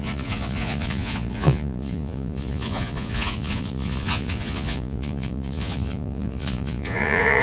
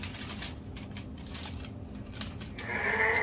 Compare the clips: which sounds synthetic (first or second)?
first